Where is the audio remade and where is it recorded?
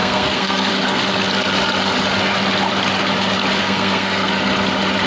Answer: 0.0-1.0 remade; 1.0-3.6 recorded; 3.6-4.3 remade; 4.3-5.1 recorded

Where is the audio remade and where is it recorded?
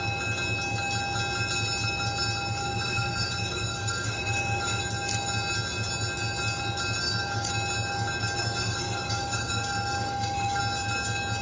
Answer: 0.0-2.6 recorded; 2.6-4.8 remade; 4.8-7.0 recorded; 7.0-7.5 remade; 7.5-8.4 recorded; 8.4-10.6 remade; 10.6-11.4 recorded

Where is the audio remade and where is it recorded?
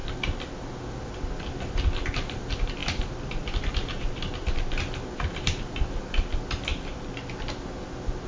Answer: 0.0-8.3 recorded